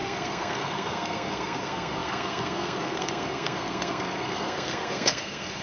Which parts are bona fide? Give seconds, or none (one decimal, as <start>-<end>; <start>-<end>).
none